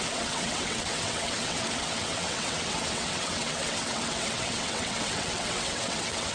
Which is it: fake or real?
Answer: fake